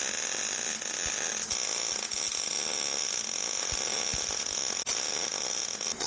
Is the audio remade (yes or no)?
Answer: no